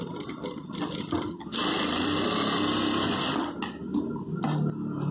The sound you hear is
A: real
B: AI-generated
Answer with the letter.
A